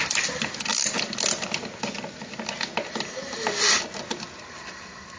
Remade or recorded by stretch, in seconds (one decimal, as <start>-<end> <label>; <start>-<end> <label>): 0.0-5.2 recorded